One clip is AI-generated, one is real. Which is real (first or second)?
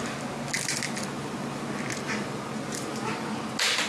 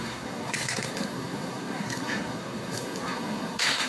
first